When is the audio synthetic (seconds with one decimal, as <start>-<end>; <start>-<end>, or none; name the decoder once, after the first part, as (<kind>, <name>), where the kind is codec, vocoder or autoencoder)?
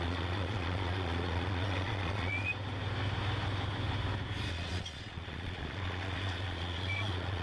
0.0-2.5 (vocoder, Vocos); 4.5-7.4